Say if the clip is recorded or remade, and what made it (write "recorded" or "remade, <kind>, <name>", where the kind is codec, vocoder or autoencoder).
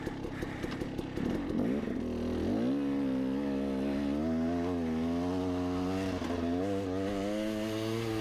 recorded